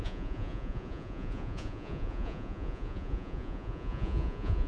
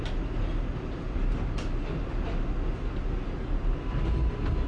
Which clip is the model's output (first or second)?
first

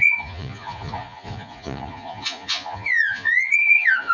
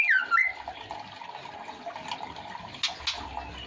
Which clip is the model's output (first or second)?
first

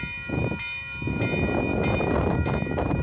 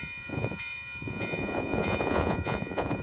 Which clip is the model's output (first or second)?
second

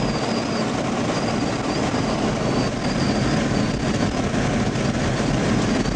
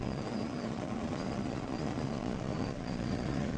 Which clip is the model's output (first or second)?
second